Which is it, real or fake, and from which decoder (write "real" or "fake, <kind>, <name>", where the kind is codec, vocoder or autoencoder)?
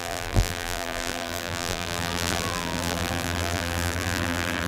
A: fake, vocoder, BigVGAN v2